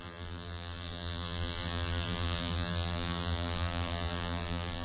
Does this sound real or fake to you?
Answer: fake